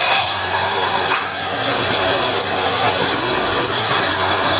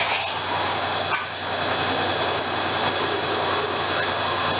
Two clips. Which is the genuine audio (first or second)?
second